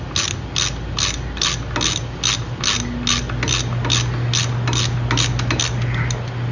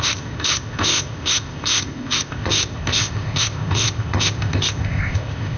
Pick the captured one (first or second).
first